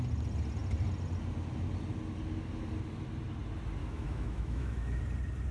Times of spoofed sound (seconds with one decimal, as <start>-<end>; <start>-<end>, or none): 3.8-5.0